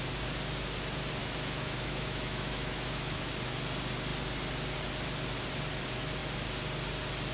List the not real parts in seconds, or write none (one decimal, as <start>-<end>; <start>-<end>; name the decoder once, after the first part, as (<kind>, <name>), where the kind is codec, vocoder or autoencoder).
1.2-3.2 (autoencoder, DAC-VAE)